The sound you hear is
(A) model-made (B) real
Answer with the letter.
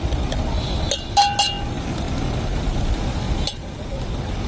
B